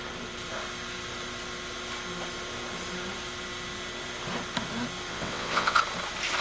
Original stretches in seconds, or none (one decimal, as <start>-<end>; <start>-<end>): 0.0-5.1; 5.8-6.4